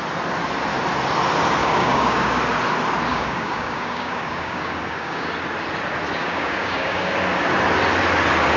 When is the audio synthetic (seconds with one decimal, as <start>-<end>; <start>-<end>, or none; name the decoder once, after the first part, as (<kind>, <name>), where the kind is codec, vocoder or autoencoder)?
1.6-2.4 (codec, DAC); 3.1-5.3; 6.2-7.1